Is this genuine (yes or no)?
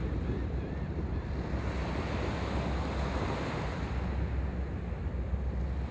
yes